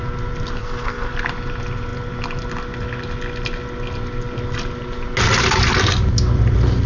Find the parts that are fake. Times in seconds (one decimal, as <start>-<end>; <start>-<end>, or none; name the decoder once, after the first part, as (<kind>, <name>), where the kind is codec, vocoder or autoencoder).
0.6-1.1 (codec, SNAC)

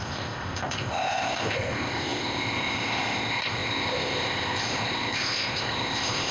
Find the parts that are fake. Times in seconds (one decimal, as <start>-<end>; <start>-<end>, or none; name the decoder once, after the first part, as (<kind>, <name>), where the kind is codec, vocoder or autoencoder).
0.0-6.3 (codec, ZipCodec)

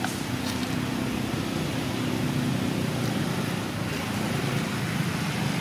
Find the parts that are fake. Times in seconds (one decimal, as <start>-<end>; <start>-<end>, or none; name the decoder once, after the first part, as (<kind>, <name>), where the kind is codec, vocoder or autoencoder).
none